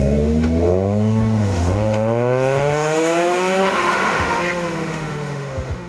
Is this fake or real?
fake